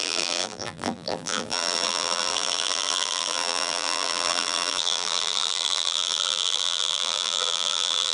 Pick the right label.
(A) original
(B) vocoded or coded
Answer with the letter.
B